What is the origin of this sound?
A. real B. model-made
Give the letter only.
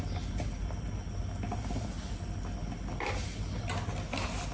A